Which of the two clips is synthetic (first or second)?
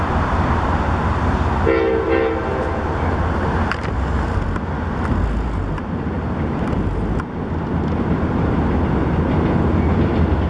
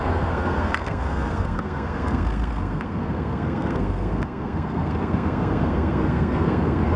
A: second